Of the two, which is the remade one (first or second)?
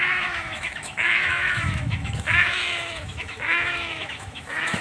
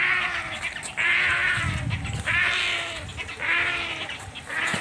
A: first